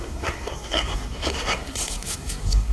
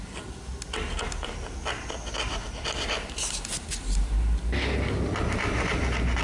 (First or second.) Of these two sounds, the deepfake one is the first